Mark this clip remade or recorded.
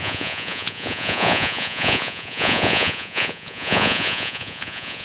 remade